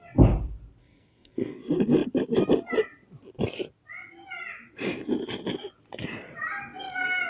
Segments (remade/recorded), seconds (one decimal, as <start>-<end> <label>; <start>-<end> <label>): 0.0-0.8 recorded; 0.8-1.6 remade; 1.6-7.3 recorded